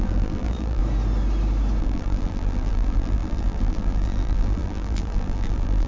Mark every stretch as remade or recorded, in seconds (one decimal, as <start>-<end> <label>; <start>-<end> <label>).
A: 0.0-0.8 remade; 0.8-1.8 recorded; 1.8-5.9 remade